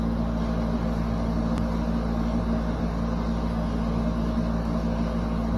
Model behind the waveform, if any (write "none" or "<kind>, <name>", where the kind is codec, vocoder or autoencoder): none